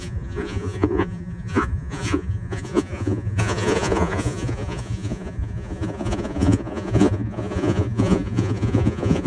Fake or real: fake